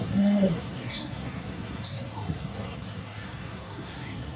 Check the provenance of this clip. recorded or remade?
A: remade